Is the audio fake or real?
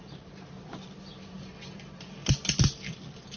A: real